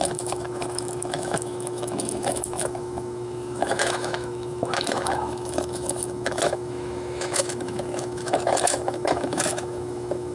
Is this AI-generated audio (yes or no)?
yes